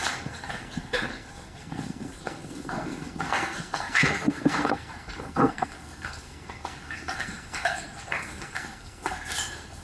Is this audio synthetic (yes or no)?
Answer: yes